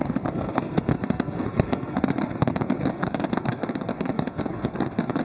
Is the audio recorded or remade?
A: remade